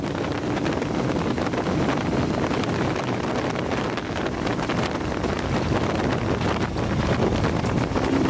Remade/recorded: recorded